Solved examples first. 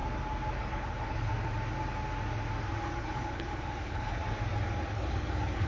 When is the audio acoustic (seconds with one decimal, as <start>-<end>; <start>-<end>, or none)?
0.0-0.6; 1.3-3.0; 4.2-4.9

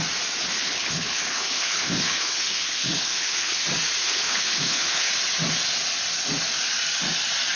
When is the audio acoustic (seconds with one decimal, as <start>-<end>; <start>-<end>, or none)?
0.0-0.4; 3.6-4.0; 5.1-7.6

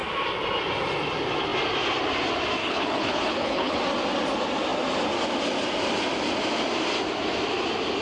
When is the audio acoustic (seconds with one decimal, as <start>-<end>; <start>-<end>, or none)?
0.0-2.6; 3.8-8.0

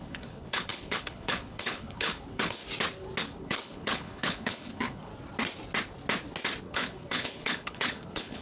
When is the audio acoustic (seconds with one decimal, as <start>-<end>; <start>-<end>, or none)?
2.6-3.2; 5.1-6.6

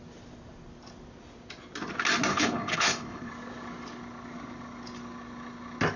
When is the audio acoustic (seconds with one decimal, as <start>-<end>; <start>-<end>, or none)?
0.0-2.3; 3.3-6.0

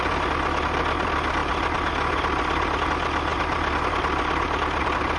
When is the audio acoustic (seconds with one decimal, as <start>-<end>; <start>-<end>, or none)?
0.0-5.2

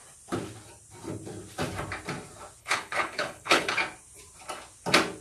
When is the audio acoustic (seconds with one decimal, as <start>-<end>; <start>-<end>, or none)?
0.0-2.6; 3.7-5.2